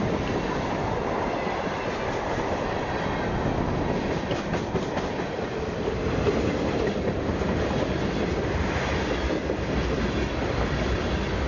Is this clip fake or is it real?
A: fake